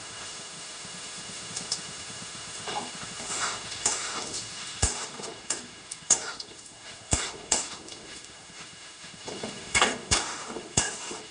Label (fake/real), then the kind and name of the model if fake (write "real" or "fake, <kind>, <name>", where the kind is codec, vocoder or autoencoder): fake, autoencoder, DAC-VAE